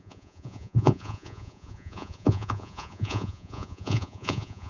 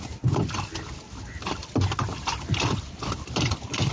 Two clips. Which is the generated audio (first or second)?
first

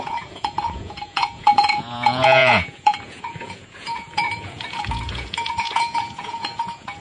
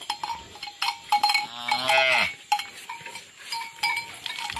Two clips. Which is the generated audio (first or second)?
first